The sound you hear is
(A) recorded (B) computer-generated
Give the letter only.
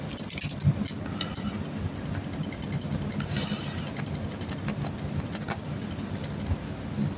A